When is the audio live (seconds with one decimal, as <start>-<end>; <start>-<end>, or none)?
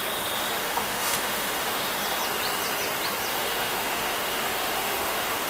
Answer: 0.0-0.6; 1.9-3.3